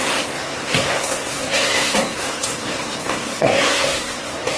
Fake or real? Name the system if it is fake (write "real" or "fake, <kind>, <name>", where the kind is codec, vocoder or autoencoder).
fake, codec, SNAC